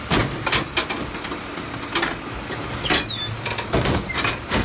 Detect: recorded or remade recorded